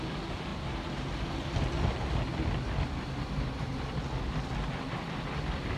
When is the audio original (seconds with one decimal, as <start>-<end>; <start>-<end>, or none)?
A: 0.0-5.8